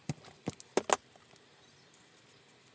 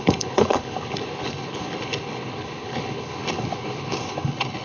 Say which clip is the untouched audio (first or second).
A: first